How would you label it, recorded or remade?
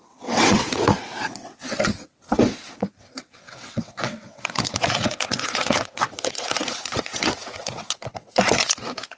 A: remade